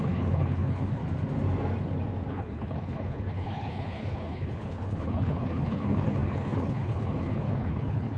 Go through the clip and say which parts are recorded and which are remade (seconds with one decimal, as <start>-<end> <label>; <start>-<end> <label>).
0.0-1.0 remade; 1.0-2.3 recorded; 2.3-8.2 remade